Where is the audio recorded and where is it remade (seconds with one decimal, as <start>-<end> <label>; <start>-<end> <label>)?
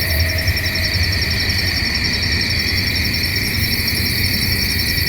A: 0.0-0.8 recorded; 0.8-2.9 remade; 2.9-3.3 recorded; 3.3-3.8 remade; 3.8-5.1 recorded